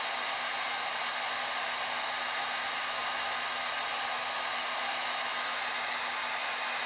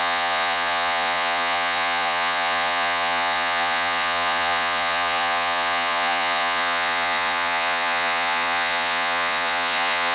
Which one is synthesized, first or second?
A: second